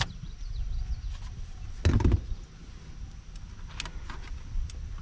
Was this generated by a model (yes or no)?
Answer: no